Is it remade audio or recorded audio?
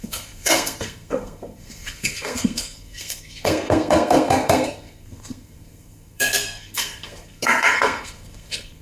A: remade